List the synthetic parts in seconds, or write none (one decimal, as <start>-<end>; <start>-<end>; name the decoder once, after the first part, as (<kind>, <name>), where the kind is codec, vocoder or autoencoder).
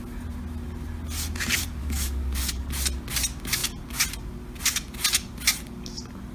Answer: 1.8-2.7 (codec, DAC)